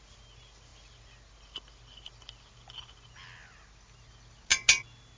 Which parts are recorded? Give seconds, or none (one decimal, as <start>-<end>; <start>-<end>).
0.0-5.2